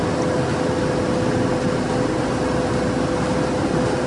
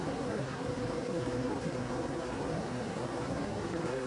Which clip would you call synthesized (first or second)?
second